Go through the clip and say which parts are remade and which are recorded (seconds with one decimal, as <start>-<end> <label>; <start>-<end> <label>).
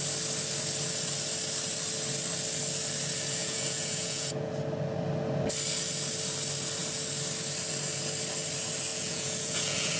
0.0-3.4 recorded; 3.4-4.5 remade; 4.5-8.9 recorded; 8.9-10.0 remade